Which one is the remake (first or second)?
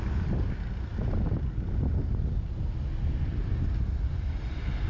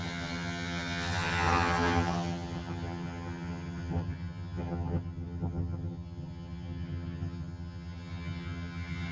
second